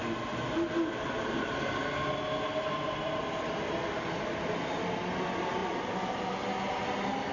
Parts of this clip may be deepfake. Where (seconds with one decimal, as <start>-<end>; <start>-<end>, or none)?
none